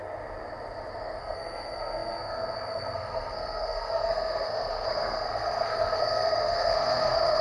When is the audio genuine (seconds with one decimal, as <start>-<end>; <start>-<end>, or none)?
0.0-1.2